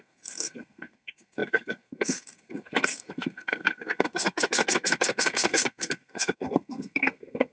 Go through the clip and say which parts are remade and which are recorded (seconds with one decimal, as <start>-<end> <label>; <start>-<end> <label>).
0.0-7.5 remade